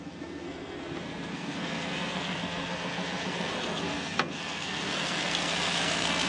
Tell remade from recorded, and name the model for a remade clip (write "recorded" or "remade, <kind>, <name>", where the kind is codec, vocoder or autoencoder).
remade, codec, SNAC